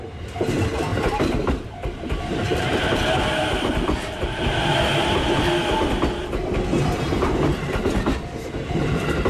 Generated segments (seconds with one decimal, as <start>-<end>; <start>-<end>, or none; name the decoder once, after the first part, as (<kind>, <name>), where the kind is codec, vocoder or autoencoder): 0.9-1.7 (vocoder, BigVGAN v2); 2.5-4.7